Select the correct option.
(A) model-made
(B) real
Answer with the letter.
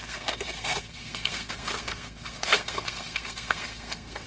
A